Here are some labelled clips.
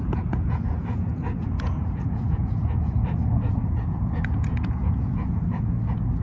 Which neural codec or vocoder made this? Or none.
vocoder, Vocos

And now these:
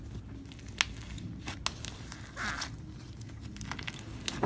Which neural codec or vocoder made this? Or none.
none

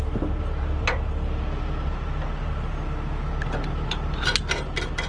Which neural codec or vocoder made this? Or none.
none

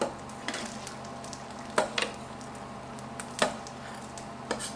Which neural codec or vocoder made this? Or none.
none